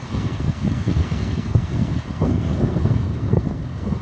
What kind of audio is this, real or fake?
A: fake